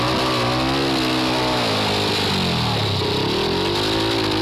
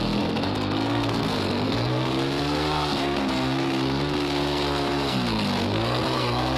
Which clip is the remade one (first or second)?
second